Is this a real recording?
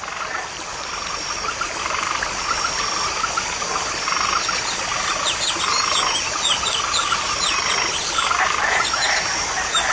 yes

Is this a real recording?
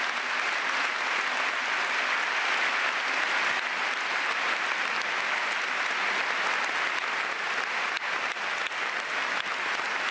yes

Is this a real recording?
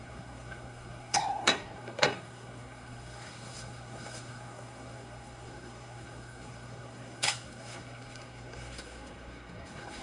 no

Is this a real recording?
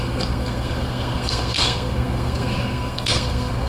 no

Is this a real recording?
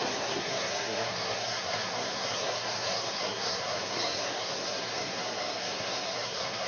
no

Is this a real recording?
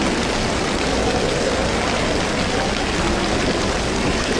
yes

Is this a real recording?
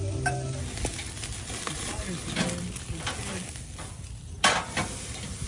yes